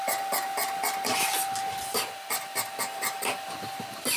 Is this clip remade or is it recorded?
remade